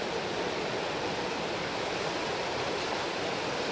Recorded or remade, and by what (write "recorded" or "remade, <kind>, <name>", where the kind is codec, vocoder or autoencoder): recorded